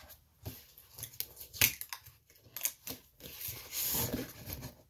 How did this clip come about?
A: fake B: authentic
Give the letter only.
B